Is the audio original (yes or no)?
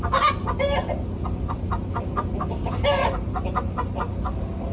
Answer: yes